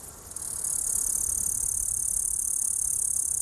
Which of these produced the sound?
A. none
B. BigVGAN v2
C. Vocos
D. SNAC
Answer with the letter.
A